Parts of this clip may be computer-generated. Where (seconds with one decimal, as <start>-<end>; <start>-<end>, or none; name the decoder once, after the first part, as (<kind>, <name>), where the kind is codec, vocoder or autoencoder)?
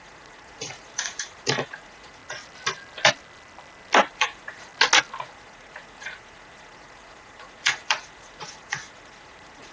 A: 0.0-2.2 (vocoder, Vocos); 4.1-4.7; 5.2-9.7